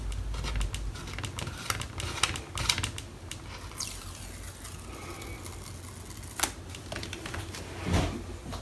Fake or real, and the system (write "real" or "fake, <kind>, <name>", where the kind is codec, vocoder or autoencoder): real